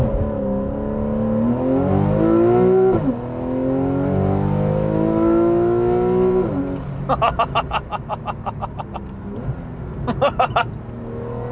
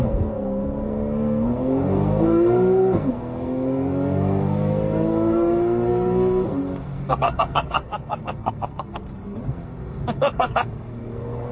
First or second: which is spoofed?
second